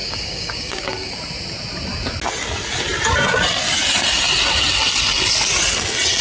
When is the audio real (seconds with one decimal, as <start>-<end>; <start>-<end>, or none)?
1.1-6.2